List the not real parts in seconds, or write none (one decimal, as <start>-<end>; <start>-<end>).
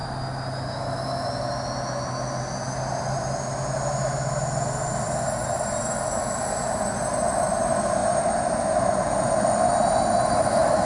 none